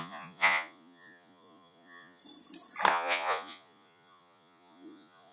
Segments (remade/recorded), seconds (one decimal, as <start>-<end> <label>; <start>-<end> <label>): 0.0-2.2 remade; 2.2-2.9 recorded; 2.9-5.3 remade

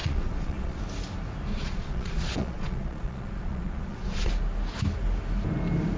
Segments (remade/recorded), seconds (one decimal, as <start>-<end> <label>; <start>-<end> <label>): 0.0-0.8 remade; 0.8-1.5 recorded; 1.5-4.3 remade; 4.3-6.0 recorded

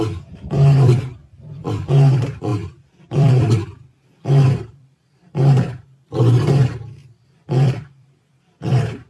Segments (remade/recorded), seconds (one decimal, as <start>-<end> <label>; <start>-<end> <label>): 0.0-1.2 recorded; 1.2-1.9 remade; 1.9-2.5 recorded; 2.5-6.2 remade; 6.2-7.0 recorded; 7.0-9.1 remade

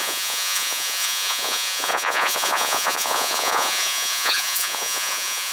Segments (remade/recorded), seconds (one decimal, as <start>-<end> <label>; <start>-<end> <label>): 0.0-5.5 remade

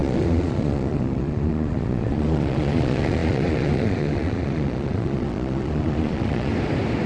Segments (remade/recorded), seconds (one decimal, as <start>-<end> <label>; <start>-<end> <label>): 0.0-6.5 remade; 6.5-7.1 recorded